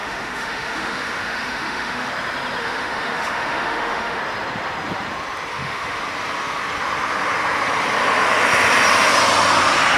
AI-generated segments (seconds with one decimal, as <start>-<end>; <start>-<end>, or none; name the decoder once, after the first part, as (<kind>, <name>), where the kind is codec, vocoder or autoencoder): 0.0-2.1 (autoencoder, DAC-VAE); 2.6-4.2; 5.5-6.0